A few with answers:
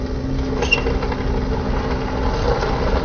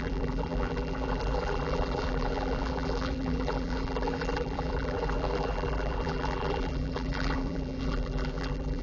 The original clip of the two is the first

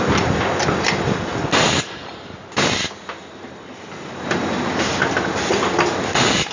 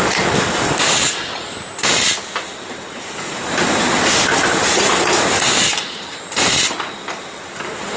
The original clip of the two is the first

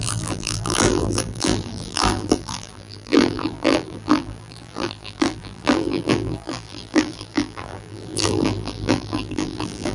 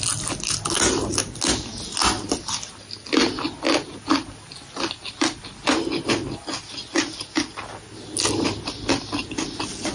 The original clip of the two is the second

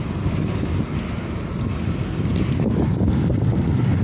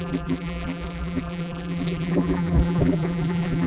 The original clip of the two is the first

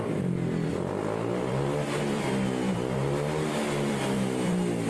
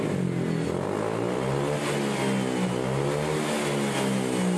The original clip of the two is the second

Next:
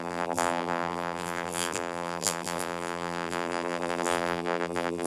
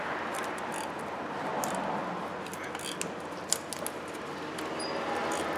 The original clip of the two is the second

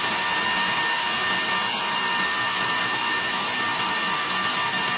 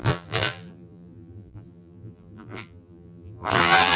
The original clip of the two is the first